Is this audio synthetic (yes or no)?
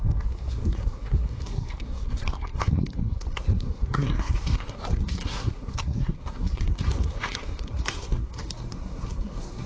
yes